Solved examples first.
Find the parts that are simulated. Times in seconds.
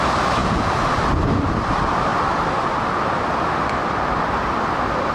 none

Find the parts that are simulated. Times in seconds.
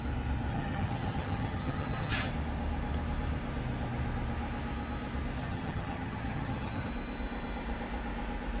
0.5-2.3 (vocoder, HiFi-GAN); 5.4-6.9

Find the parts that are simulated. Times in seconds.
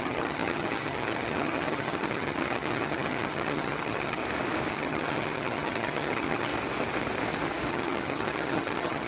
0.0-4.2 (vocoder, HiFi-GAN); 4.7-6.5; 7.7-9.1